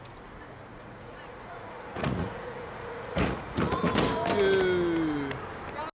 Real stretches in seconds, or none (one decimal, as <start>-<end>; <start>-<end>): 0.0-0.7; 3.9-5.9